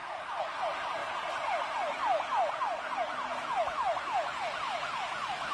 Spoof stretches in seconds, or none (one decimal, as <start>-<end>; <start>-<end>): 0.0-0.6

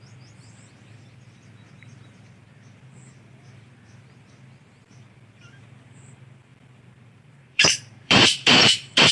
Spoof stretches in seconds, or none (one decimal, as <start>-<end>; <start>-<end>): 6.5-9.1